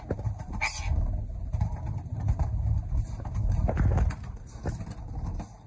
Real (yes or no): yes